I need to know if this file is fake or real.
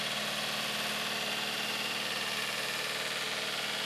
real